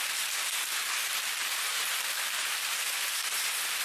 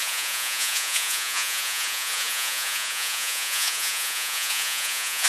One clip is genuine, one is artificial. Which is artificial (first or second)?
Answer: second